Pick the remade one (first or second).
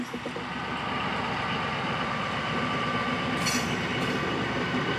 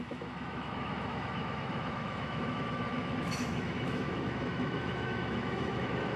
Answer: second